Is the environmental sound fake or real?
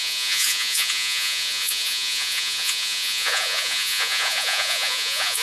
fake